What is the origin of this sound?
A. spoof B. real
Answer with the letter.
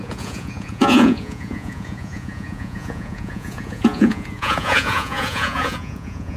A